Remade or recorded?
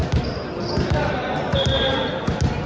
recorded